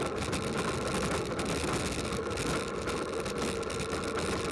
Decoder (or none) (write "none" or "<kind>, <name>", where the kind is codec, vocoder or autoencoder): none